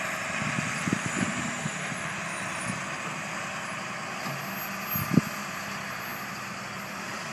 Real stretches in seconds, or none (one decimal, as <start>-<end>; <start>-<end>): 0.0-7.3